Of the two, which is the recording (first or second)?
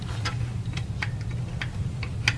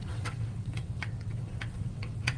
first